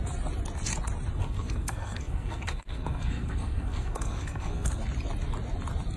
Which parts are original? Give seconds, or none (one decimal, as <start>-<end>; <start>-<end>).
0.0-1.2; 4.8-6.0